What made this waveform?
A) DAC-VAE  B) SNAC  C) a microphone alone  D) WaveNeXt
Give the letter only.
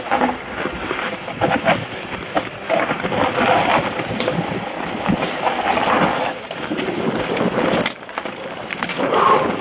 C